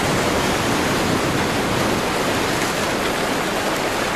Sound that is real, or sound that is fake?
real